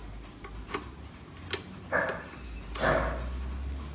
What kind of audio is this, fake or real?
real